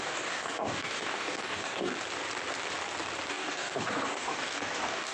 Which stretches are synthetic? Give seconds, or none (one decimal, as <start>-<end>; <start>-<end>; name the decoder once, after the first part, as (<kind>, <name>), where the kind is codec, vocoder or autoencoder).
0.0-1.9 (codec, DAC); 3.3-5.1